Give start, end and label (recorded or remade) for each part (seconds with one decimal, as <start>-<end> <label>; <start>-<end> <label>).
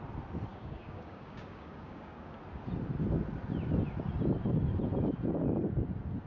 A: 0.0-0.5 recorded; 0.5-2.3 remade; 2.3-6.3 recorded